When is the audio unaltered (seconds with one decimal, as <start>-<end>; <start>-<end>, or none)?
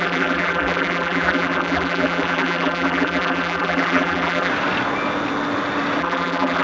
4.5-6.0